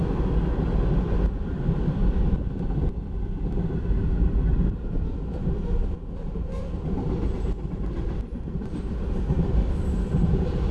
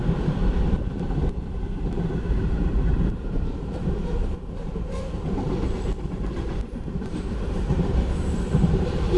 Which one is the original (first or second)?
first